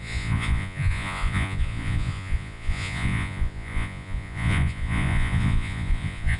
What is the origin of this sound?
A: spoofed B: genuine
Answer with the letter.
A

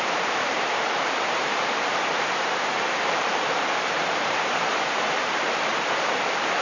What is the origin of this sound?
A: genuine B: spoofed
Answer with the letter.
B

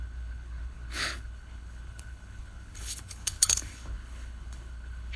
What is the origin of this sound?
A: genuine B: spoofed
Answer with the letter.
B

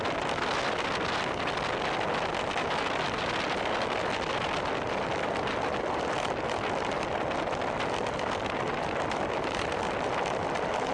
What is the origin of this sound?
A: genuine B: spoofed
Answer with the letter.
A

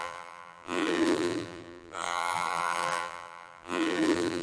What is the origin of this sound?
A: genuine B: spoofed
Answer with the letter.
B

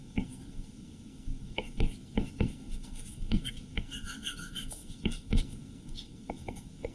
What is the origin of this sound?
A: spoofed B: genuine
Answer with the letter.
A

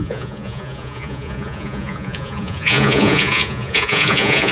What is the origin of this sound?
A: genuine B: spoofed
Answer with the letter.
B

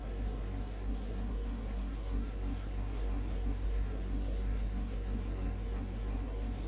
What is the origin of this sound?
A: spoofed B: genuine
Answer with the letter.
A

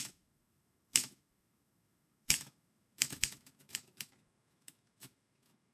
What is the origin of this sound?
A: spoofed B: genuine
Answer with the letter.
A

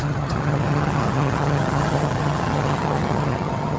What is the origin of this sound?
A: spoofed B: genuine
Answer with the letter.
A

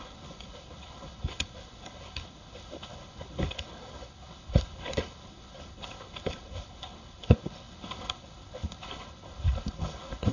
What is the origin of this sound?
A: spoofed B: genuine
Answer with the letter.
A